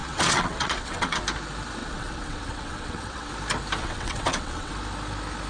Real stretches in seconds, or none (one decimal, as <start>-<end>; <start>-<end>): 1.2-1.8; 3.3-3.8; 4.7-5.5